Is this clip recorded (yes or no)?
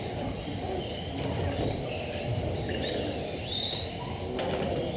yes